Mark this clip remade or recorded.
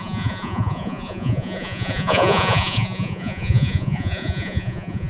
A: remade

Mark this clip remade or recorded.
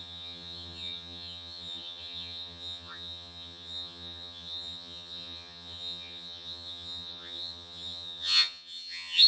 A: remade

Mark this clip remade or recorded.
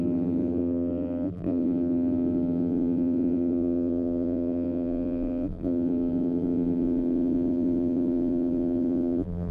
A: remade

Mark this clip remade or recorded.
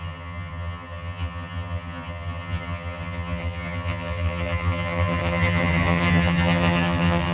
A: remade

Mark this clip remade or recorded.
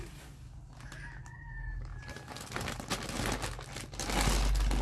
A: recorded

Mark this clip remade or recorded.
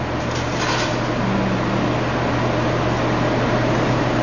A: recorded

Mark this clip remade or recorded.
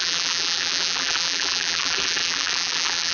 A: remade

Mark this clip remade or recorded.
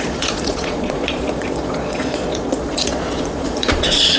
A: remade